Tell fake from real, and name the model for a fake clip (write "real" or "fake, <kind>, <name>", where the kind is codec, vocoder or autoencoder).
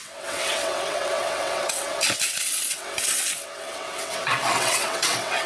fake, vocoder, WaveNeXt